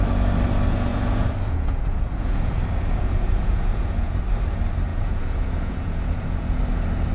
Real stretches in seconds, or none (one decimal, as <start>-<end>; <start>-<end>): 0.0-0.9; 4.2-4.9; 6.6-7.1